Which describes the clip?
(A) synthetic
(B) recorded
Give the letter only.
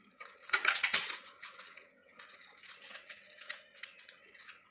A